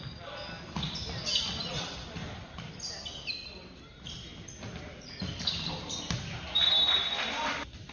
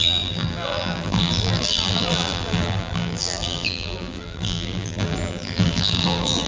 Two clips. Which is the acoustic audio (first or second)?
first